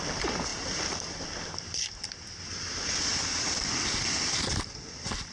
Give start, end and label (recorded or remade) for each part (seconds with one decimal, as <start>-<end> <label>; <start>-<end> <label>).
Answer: 0.0-0.5 recorded; 0.5-1.9 remade; 1.9-5.3 recorded